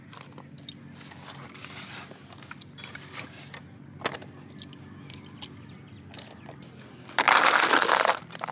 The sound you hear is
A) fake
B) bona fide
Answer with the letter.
B